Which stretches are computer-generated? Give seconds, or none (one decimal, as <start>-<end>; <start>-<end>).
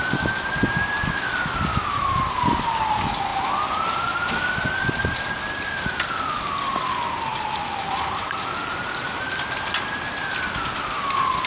1.7-2.2